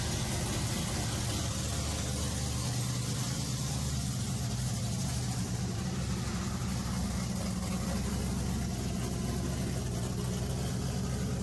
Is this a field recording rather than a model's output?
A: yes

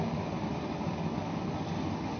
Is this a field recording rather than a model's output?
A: yes